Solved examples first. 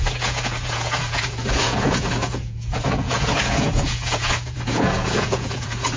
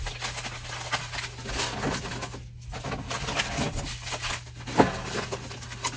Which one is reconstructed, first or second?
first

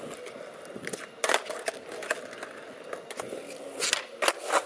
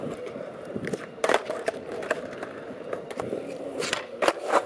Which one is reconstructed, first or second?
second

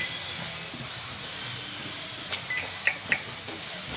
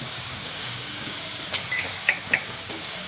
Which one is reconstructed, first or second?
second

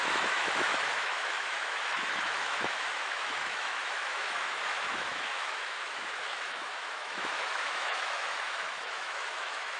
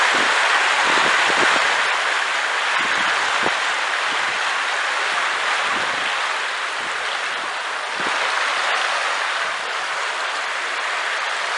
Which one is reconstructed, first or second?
first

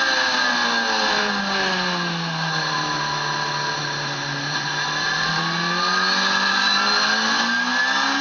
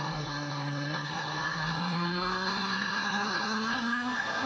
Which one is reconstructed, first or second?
second